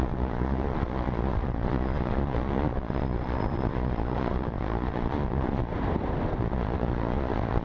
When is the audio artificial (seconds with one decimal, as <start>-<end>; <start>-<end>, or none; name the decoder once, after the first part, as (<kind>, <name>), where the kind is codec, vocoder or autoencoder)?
0.0-5.7 (vocoder, Vocos); 6.4-7.6